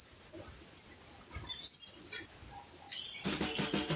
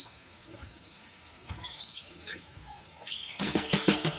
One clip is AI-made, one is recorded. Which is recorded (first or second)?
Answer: first